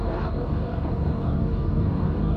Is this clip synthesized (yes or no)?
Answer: yes